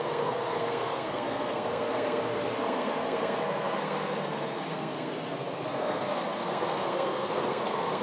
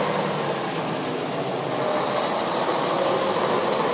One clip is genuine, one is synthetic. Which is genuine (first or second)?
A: second